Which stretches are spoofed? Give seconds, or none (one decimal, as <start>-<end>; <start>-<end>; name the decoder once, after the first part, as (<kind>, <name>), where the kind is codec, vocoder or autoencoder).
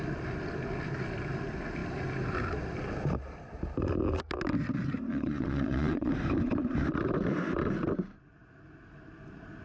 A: 5.1-6.1 (vocoder, Vocos)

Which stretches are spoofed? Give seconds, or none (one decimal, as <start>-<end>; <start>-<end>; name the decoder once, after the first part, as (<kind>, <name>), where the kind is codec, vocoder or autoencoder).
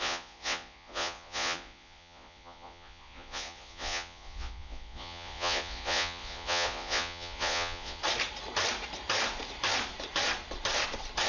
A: 0.0-8.0 (vocoder, Vocos)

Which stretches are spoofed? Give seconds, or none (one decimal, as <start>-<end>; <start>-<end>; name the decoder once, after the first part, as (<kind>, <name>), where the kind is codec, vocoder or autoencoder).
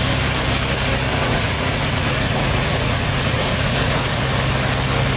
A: 1.1-4.2 (vocoder, Vocos)